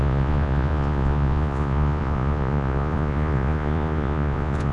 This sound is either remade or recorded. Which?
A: remade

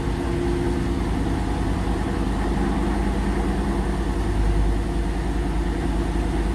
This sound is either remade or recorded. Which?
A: recorded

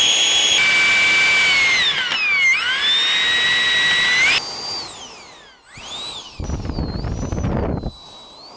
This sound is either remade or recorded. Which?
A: recorded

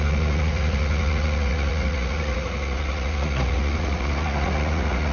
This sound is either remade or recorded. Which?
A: remade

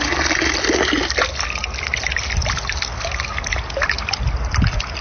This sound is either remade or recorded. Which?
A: recorded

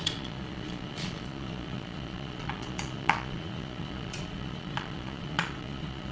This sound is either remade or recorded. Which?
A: remade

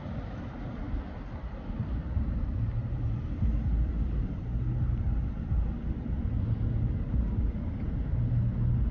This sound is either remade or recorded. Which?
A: recorded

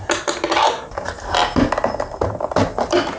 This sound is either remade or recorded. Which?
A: recorded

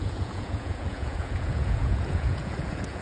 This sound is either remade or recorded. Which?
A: remade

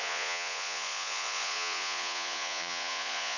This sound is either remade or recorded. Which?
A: remade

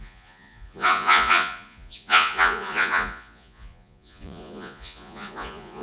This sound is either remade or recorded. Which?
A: remade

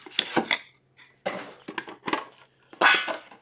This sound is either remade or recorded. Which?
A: recorded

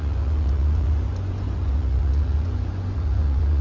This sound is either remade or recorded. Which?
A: remade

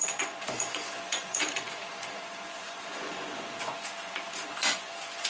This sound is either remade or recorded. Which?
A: remade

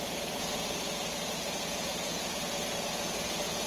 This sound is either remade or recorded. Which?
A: remade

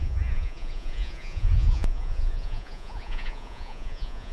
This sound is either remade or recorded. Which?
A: remade